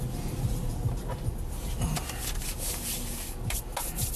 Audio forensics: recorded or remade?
recorded